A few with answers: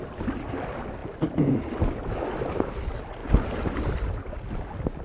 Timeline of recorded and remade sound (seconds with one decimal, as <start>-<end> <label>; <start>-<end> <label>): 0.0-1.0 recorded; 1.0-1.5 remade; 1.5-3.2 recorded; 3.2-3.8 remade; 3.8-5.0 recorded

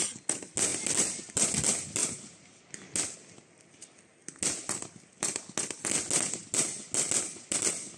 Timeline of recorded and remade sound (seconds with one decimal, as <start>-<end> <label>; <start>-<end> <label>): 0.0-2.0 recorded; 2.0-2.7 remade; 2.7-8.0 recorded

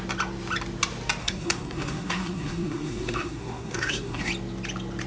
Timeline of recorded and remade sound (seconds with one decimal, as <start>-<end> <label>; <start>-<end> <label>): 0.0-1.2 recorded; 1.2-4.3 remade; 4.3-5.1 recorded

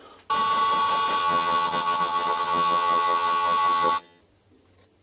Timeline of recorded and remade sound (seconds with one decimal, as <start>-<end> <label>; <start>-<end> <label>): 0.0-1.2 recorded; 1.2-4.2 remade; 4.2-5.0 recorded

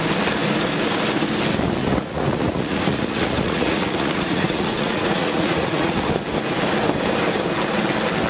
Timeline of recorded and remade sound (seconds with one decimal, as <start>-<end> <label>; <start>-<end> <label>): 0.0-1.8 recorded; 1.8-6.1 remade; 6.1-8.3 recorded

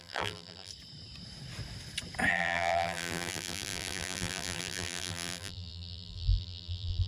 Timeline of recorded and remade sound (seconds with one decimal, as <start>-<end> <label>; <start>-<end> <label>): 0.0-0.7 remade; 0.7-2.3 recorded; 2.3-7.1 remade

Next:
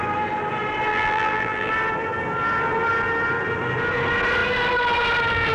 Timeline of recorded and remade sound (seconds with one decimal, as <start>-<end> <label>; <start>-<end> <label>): 0.0-0.9 recorded; 0.9-1.7 remade; 1.7-5.5 recorded

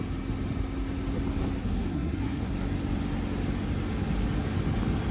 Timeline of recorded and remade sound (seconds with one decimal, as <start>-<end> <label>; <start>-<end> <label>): 0.0-1.6 recorded; 1.6-2.5 remade; 2.5-5.1 recorded